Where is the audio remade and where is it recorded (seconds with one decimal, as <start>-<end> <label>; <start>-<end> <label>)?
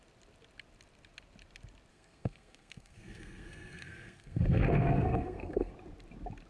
0.0-1.9 recorded; 1.9-5.7 remade; 5.7-6.5 recorded